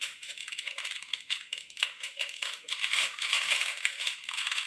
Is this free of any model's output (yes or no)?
no